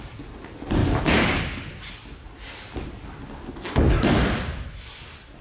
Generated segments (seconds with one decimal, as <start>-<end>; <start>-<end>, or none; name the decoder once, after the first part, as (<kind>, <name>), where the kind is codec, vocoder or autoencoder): 0.8-1.4 (codec, DAC)